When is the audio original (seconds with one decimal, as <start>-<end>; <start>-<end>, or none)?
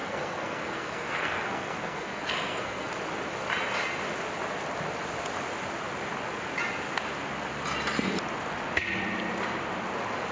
2.9-10.3